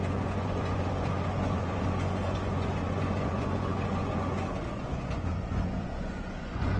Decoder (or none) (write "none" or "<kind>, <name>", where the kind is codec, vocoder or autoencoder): vocoder, Vocos